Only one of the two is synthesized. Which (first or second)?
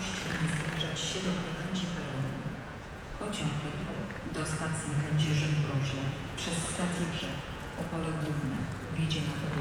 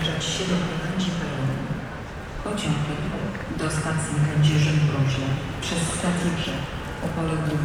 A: first